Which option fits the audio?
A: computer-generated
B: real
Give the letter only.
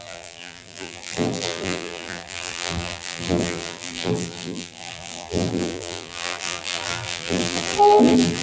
A